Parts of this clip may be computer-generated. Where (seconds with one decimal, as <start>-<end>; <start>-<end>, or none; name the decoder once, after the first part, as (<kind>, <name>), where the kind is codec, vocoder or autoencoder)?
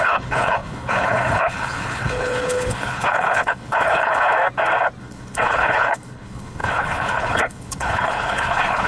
0.0-4.3 (codec, HILCodec); 5.0-8.9